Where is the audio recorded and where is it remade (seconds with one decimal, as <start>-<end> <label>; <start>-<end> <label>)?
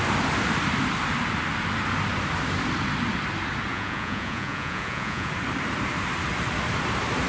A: 0.0-3.7 recorded; 3.7-5.3 remade; 5.3-7.3 recorded